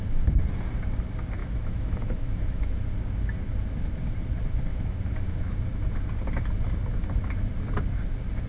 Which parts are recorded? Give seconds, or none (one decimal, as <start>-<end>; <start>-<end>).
0.0-1.4; 2.8-4.7; 5.4-8.5